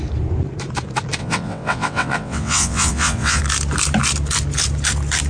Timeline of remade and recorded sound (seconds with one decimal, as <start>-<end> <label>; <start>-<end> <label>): 0.0-1.2 recorded; 1.2-3.4 remade; 3.4-5.3 recorded